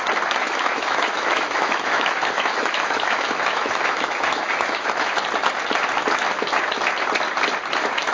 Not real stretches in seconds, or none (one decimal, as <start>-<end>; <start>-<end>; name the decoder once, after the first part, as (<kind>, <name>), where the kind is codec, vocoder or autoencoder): 0.4-5.3 (autoencoder, DAC-VAE)